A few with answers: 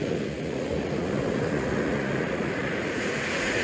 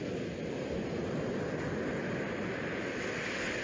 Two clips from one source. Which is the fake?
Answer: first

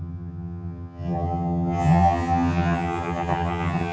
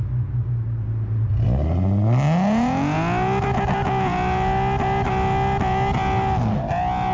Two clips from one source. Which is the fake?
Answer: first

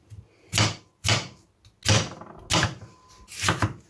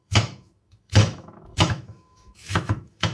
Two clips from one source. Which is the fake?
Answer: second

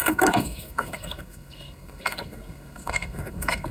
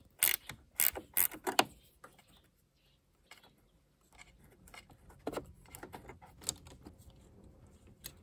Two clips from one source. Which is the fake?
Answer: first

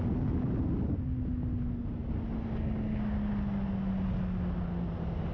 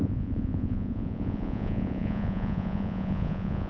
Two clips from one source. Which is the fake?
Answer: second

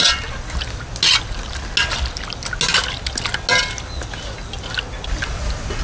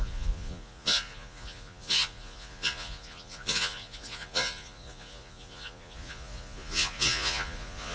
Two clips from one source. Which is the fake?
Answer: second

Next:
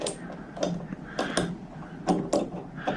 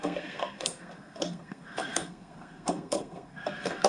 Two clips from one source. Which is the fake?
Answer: second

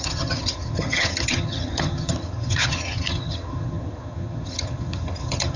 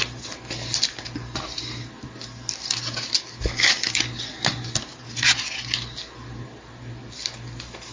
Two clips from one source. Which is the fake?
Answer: first